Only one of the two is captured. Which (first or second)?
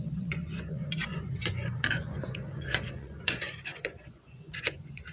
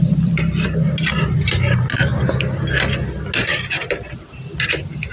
second